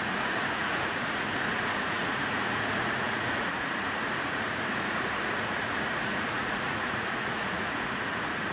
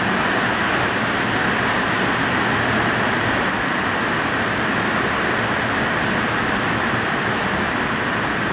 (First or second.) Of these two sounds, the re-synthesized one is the first